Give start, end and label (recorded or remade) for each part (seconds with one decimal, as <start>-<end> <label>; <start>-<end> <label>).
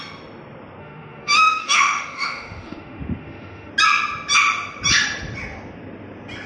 0.0-0.8 recorded; 0.8-3.7 remade; 3.7-6.5 recorded